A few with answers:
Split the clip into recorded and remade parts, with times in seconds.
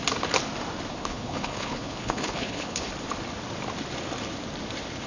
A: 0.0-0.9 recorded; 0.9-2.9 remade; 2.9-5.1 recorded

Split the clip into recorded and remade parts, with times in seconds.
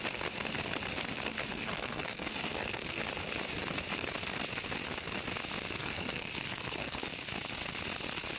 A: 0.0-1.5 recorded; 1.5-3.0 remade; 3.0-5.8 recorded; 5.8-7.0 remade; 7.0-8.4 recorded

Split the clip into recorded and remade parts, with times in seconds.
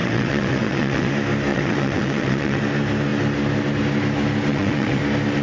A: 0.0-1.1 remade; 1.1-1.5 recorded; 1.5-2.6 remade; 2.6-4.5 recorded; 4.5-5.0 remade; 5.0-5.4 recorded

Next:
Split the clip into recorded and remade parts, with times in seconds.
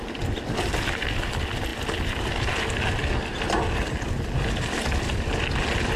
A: 0.0-6.0 recorded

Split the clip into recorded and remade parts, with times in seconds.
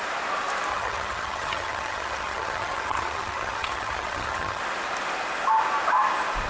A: 0.0-0.7 recorded; 0.7-4.6 remade; 4.6-6.5 recorded